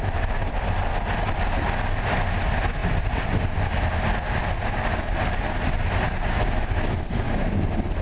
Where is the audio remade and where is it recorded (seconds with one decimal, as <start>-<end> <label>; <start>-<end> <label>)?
0.0-8.0 recorded